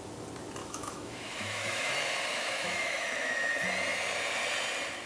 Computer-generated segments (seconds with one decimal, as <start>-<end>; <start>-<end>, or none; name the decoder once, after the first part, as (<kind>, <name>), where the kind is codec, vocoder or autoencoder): 0.6-1.9 (autoencoder, DAC-VAE); 2.3-3.5